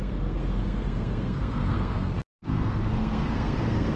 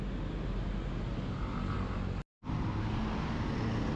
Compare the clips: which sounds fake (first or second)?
first